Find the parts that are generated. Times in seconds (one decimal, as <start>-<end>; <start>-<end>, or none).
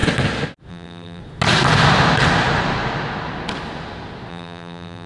0.7-1.2; 4.3-5.1